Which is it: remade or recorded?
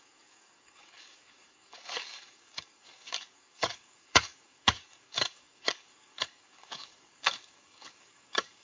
remade